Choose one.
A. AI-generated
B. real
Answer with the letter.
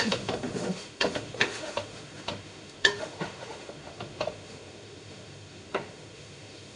A